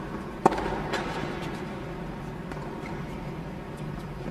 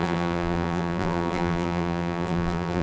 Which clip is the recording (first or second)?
first